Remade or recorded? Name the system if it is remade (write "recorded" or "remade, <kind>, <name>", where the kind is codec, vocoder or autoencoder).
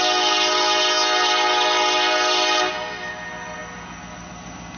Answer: recorded